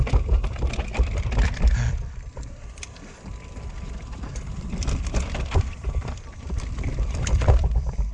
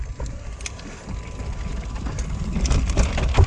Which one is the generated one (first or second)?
first